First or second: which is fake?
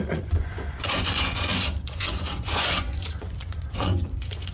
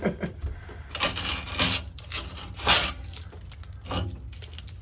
first